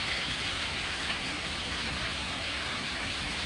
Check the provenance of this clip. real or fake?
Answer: fake